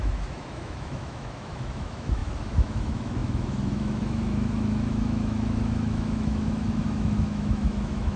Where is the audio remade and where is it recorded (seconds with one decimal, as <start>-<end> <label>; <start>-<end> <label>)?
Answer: 0.0-8.2 remade